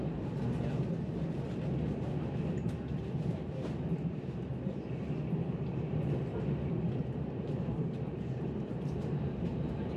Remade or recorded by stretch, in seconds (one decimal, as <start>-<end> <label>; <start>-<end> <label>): 0.0-0.4 remade; 0.4-3.3 recorded; 3.3-4.5 remade; 4.5-7.2 recorded; 7.2-10.0 remade

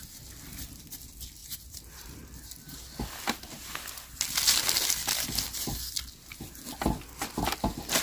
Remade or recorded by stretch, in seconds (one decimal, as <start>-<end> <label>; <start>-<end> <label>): 0.0-1.4 recorded; 1.4-2.2 remade; 2.2-8.0 recorded

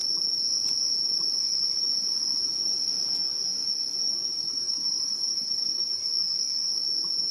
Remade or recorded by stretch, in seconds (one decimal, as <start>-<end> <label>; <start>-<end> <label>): 0.0-4.3 recorded; 4.3-6.1 remade; 6.1-7.3 recorded

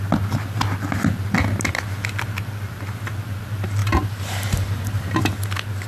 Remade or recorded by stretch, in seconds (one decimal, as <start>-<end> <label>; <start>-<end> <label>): 0.0-3.8 recorded; 3.8-5.1 remade; 5.1-5.9 recorded

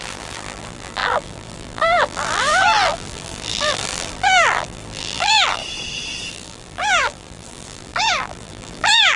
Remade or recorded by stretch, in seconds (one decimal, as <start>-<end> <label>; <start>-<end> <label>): 0.0-5.6 remade; 5.6-6.3 recorded; 6.3-9.2 remade

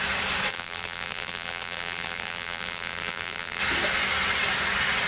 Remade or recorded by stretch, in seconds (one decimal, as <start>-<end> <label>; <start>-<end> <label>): 0.0-0.5 recorded; 0.5-3.6 remade; 3.6-5.1 recorded

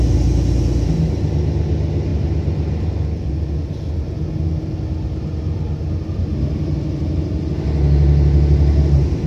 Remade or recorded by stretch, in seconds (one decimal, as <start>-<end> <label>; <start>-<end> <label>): 0.0-9.3 recorded

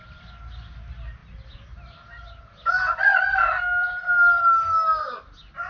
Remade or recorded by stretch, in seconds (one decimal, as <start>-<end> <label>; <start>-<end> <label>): 0.0-5.7 recorded